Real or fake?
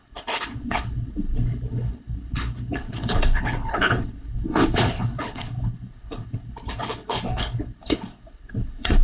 fake